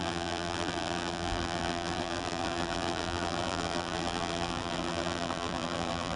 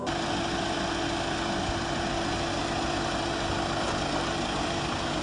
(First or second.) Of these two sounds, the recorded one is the second